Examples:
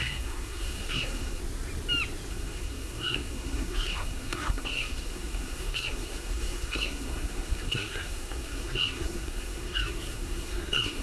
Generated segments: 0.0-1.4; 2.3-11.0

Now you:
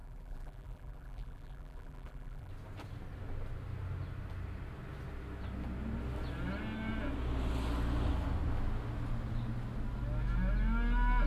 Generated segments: 0.0-2.5